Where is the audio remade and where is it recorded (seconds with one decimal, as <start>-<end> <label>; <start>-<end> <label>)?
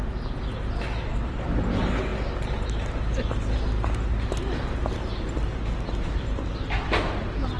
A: 0.0-7.6 recorded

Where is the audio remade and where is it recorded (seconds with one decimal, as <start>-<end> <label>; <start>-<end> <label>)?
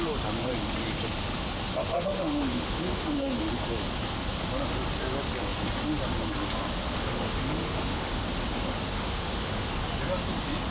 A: 0.0-1.8 recorded; 1.8-3.4 remade; 3.4-7.0 recorded; 7.0-8.2 remade; 8.2-8.9 recorded; 8.9-9.8 remade; 9.8-10.7 recorded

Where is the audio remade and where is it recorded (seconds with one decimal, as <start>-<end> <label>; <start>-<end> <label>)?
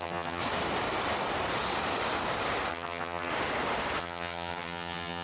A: 0.0-0.4 remade; 0.4-2.7 recorded; 2.7-3.3 remade; 3.3-4.0 recorded; 4.0-5.2 remade